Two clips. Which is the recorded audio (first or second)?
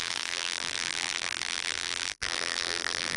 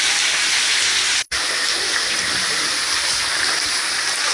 second